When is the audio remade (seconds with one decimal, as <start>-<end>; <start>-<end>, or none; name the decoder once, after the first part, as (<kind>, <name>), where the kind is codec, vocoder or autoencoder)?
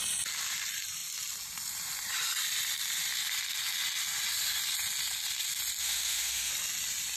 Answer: 5.8-6.5 (autoencoder, DAC-VAE)